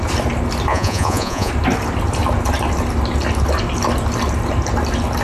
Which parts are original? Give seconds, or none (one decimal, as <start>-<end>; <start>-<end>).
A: 0.0-0.7; 1.5-5.2